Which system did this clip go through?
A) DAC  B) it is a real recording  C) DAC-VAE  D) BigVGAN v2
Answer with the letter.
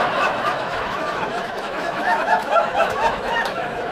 C